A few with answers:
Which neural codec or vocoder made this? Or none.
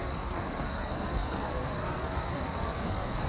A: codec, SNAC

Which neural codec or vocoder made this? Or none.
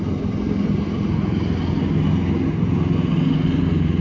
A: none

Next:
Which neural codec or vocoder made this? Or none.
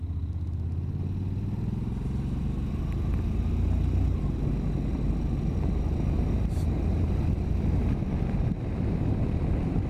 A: none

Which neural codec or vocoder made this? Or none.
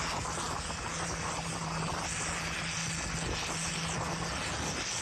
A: none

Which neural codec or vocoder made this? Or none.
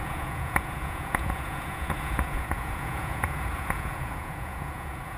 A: vocoder, Vocos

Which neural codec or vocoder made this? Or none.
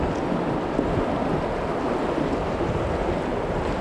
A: none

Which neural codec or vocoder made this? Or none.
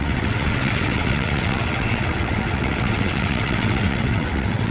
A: vocoder, WaveNeXt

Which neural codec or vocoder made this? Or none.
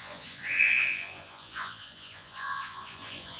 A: vocoder, Vocos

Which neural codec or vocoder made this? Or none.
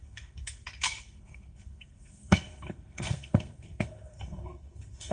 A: codec, SNAC